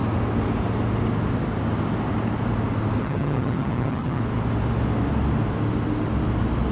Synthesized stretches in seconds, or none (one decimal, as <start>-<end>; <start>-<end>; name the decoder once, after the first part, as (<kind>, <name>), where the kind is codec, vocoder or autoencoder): 3.0-4.2 (vocoder, HiFi-GAN)